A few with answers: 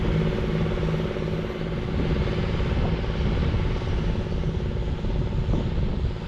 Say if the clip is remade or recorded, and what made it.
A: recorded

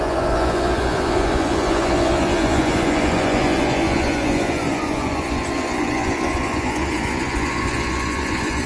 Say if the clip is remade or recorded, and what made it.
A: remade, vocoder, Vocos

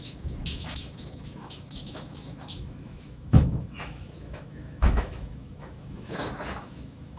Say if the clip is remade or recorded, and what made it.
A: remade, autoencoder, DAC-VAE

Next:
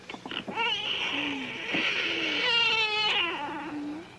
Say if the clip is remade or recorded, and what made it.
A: recorded